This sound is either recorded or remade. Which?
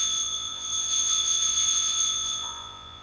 remade